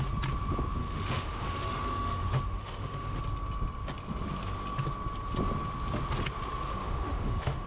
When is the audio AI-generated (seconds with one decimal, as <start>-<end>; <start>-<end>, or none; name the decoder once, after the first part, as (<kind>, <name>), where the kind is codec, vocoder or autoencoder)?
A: 0.8-3.2 (autoencoder, DAC-VAE); 6.8-7.7